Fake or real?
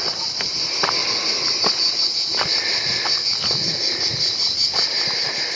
real